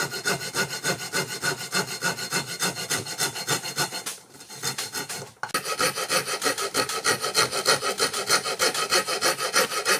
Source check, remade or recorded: recorded